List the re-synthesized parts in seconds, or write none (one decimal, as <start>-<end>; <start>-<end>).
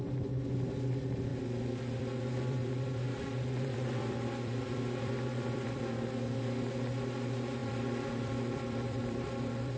1.3-5.8; 7.6-9.8